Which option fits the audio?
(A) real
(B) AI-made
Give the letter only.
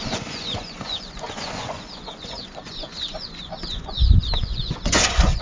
B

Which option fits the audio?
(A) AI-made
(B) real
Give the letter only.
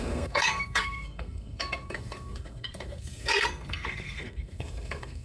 A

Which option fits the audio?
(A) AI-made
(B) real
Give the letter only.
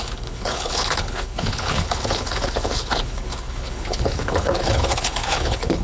A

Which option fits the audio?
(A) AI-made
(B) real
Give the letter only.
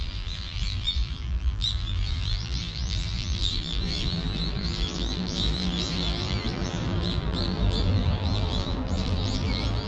A